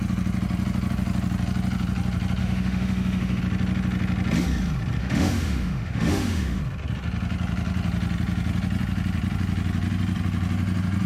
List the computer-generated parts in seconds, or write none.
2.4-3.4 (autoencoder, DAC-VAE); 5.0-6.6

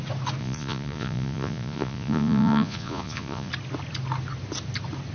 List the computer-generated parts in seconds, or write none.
0.4-3.5 (vocoder, Vocos)

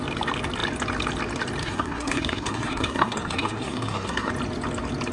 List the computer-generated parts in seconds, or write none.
1.6-4.3 (codec, SNAC)

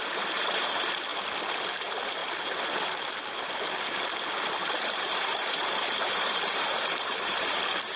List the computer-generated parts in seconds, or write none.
0.0-1.1 (vocoder, BigVGAN v2); 1.7-8.0

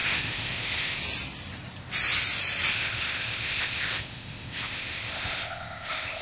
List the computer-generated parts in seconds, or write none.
0.0-1.0 (codec, ZipCodec); 2.7-6.2